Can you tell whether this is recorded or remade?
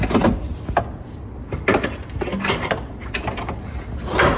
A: recorded